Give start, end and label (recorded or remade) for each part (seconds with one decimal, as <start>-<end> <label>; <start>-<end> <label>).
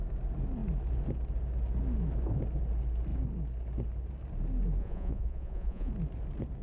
0.0-4.8 recorded; 4.8-5.9 remade; 5.9-6.6 recorded